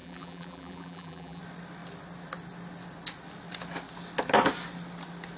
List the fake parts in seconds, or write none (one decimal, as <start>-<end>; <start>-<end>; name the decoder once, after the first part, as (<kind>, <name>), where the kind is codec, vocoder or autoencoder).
0.0-1.4 (vocoder, BigVGAN v2)